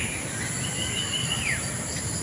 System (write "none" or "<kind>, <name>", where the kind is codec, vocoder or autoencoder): none